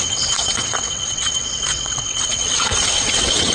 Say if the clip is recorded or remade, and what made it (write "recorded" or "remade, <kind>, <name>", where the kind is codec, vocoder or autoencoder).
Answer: remade, vocoder, WaveNeXt